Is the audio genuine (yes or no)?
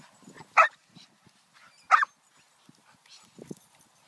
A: yes